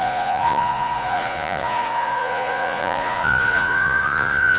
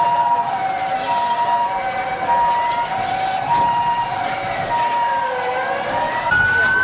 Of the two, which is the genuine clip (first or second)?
second